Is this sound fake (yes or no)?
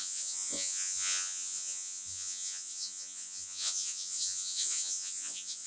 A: yes